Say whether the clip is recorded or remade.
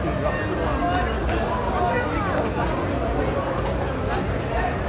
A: recorded